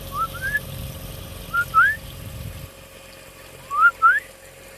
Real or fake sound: real